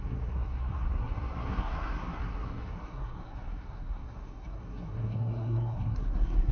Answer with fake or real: fake